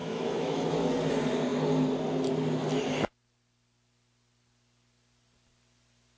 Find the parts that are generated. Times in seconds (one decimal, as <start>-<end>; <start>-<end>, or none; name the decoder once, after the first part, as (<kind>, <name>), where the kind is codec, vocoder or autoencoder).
0.0-0.9 (autoencoder, DAC-VAE)